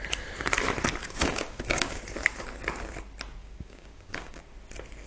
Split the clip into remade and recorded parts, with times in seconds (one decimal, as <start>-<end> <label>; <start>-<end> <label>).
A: 0.0-1.0 recorded; 1.0-2.0 remade; 2.0-3.4 recorded; 3.4-4.4 remade; 4.4-5.1 recorded